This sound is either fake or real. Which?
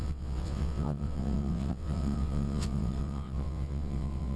fake